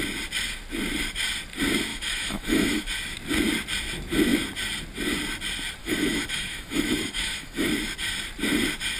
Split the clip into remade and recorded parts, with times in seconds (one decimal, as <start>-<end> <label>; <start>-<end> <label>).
0.0-1.9 recorded; 1.9-2.9 remade; 2.9-5.8 recorded; 5.8-7.7 remade; 7.7-9.0 recorded